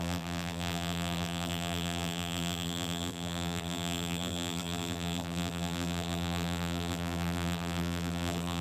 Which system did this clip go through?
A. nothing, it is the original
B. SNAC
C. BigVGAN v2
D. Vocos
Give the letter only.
C